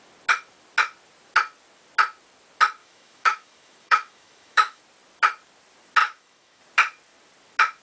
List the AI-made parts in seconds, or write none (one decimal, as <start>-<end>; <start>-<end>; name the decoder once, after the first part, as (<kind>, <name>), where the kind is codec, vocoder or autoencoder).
2.8-4.8 (autoencoder, DAC-VAE); 6.0-6.6